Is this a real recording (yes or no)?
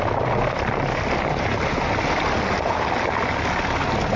yes